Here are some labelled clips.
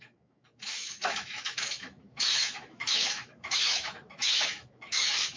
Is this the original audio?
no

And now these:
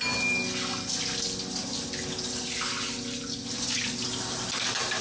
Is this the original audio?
yes